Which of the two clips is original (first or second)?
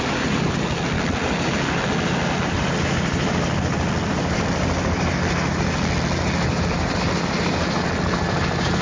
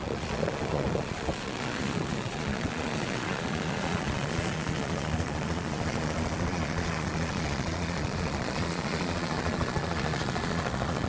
first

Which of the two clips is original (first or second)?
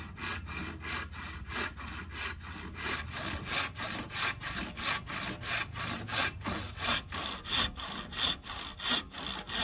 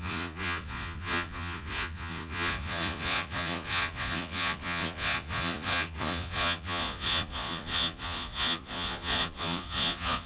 first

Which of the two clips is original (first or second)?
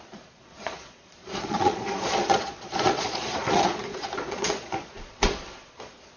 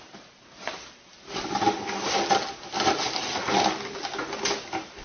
second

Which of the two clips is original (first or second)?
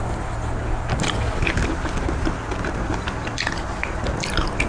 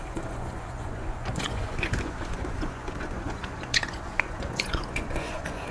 first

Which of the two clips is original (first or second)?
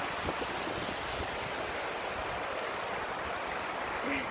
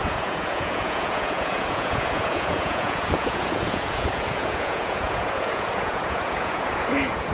first